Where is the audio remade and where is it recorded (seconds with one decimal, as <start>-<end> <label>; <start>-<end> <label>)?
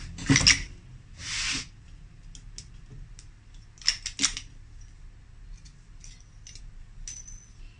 0.0-7.8 recorded